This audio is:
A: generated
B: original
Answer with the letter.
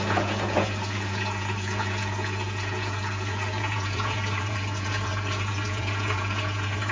A